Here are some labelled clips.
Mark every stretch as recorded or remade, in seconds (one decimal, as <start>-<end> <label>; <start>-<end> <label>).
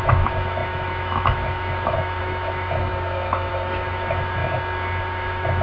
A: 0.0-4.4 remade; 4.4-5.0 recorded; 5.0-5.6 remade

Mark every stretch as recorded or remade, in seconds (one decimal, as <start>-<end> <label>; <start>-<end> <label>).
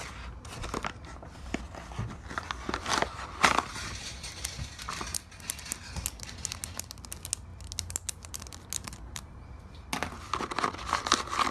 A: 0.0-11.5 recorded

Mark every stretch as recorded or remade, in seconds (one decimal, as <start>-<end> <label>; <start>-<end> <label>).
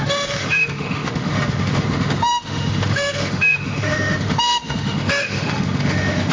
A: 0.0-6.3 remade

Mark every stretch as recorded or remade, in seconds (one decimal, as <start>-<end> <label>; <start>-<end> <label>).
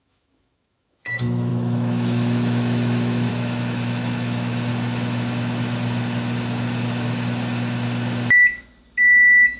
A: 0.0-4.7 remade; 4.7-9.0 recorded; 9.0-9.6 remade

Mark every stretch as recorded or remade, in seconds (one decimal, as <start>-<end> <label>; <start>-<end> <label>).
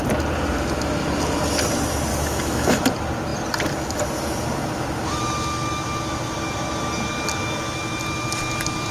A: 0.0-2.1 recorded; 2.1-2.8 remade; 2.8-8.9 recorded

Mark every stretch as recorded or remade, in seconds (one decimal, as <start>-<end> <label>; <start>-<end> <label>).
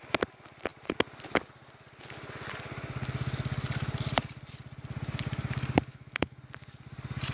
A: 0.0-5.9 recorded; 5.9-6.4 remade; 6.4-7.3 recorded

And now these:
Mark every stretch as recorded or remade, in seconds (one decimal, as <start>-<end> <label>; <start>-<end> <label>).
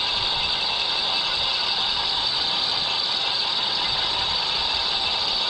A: 0.0-5.5 recorded